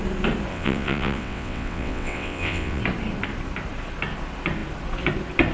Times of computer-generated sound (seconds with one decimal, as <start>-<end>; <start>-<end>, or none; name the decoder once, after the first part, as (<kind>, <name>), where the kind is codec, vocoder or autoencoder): 0.5-2.8 (vocoder, WaveNeXt)